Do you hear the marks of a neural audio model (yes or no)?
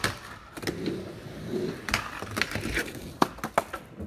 no